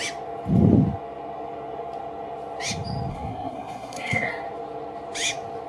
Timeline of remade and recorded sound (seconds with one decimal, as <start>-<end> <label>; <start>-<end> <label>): 0.0-3.1 recorded; 3.1-4.3 remade; 4.3-5.7 recorded